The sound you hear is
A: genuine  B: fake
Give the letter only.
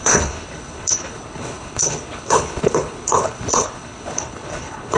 B